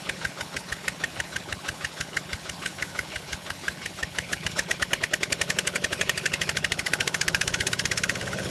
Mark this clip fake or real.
fake